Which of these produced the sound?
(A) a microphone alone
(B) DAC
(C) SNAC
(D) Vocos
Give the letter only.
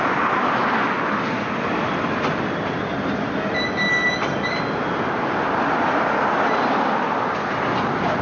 A